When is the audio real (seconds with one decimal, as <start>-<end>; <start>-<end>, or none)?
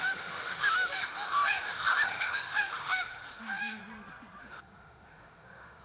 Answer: 3.8-4.4